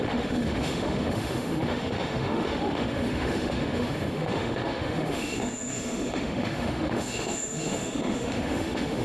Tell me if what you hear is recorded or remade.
remade